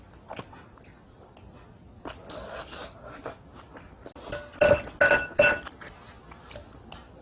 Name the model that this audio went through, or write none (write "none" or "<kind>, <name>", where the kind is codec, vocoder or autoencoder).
none